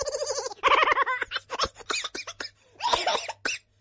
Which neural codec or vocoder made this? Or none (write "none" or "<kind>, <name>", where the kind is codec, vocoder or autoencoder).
none